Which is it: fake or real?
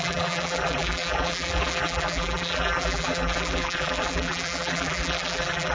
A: fake